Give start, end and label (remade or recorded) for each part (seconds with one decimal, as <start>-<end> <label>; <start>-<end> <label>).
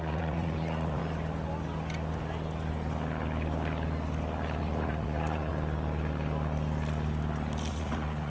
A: 0.0-1.0 remade; 1.0-4.6 recorded; 4.6-5.5 remade; 5.5-7.7 recorded; 7.7-8.3 remade